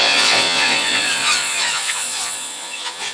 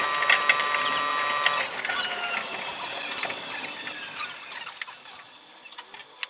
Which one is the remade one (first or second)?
first